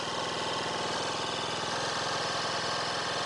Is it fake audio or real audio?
real